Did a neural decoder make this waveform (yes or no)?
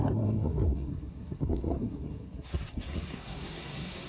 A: yes